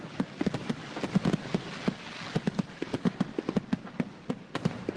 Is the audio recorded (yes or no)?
yes